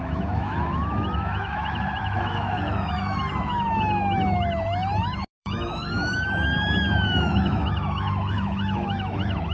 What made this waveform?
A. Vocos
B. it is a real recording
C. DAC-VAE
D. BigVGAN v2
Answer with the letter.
C